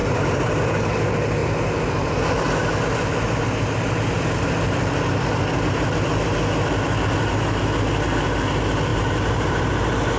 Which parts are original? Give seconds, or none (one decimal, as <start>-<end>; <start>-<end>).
0.6-8.9; 9.7-10.2

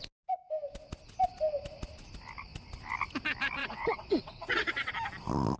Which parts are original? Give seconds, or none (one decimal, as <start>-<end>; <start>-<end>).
0.0-3.6; 4.9-5.6

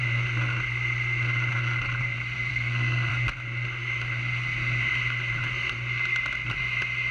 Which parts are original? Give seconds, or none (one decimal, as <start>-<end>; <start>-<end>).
0.0-2.5; 3.1-7.1

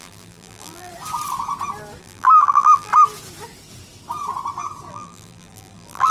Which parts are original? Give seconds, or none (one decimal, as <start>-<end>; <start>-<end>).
0.9-2.0; 2.9-4.9

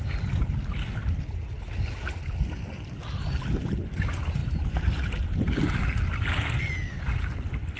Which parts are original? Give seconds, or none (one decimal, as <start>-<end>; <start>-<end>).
0.0-7.8